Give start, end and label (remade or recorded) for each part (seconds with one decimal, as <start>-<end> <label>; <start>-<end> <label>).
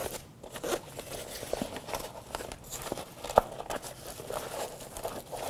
0.0-5.5 recorded